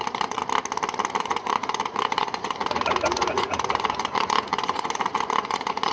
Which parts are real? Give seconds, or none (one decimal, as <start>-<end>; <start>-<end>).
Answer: 0.4-1.2